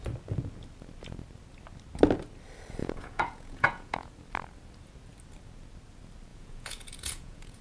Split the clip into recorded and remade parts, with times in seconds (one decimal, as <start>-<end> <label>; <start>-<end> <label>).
0.0-2.8 recorded; 2.8-4.1 remade; 4.1-6.3 recorded; 6.3-7.6 remade